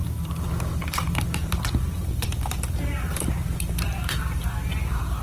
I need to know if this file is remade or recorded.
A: remade